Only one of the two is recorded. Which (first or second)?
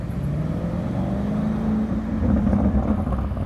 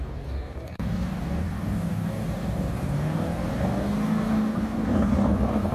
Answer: first